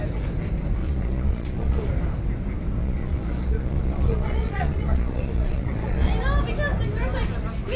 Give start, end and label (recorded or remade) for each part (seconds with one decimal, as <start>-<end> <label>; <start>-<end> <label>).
0.0-0.8 recorded; 0.8-1.9 remade; 1.9-2.8 recorded; 2.8-6.1 remade; 6.1-7.8 recorded